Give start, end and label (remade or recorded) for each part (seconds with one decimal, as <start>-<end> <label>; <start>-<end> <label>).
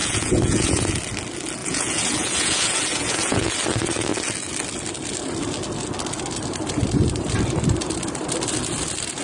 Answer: 0.0-0.9 remade; 0.9-1.6 recorded; 1.6-3.5 remade; 3.5-9.2 recorded